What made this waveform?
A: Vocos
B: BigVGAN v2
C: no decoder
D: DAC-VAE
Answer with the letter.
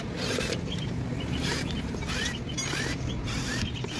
B